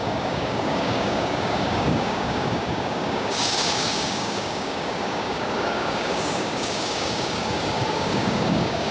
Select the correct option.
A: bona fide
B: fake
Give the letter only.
B